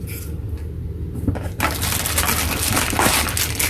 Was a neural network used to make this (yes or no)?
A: no